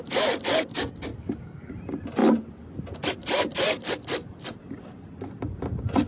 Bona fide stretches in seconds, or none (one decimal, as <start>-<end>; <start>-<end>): 0.0-1.1; 1.7-6.1